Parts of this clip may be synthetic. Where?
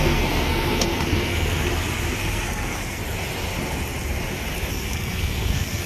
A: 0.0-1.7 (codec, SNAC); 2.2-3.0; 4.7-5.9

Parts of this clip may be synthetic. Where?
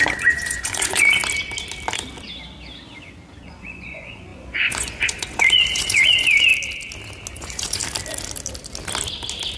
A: 0.0-1.2 (vocoder, Vocos); 3.4-6.5; 7.3-7.8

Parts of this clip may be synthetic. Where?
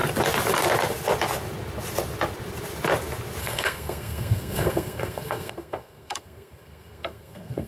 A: 3.4-7.7 (codec, SNAC)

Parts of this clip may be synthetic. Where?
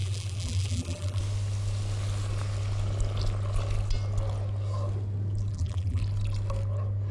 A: 0.0-1.2 (vocoder, BigVGAN v2); 5.5-6.0